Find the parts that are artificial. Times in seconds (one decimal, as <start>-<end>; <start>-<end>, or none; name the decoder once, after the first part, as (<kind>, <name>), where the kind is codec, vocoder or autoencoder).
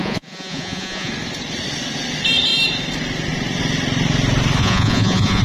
0.0-1.1 (vocoder, Vocos); 4.6-5.4